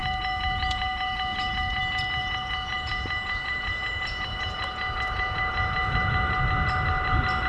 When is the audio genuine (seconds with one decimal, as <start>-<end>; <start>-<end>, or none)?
1.8-2.2; 6.4-7.5